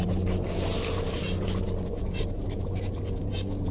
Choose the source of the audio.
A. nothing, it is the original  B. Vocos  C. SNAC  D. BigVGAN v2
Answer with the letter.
D